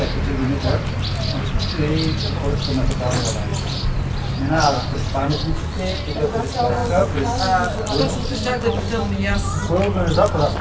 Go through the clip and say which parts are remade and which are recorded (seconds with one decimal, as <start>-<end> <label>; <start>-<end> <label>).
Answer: 0.0-10.6 recorded